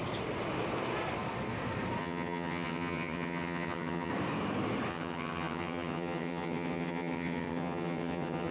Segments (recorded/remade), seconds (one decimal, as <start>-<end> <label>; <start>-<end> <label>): 0.0-2.0 recorded; 2.0-4.1 remade; 4.1-4.9 recorded; 4.9-8.5 remade